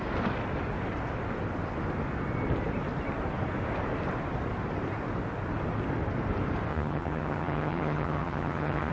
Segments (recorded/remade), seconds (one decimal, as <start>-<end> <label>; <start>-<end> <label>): 0.0-6.7 recorded; 6.7-8.9 remade